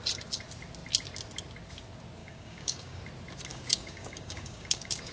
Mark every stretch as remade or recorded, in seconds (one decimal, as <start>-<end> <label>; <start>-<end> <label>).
0.0-2.2 recorded; 2.2-3.0 remade; 3.0-3.5 recorded; 3.5-5.1 remade